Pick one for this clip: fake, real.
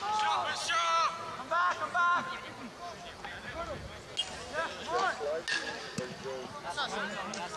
real